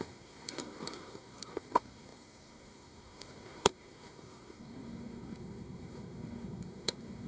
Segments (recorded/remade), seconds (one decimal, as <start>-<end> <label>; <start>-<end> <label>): 0.0-7.3 remade